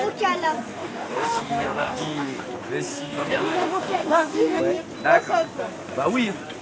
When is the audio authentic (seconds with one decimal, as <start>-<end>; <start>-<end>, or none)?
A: 0.0-0.7; 2.4-2.9; 4.6-6.6